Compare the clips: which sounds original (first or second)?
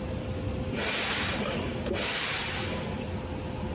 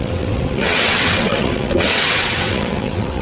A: first